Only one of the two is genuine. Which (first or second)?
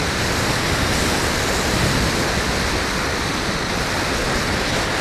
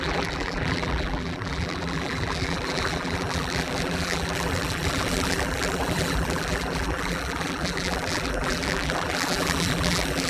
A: first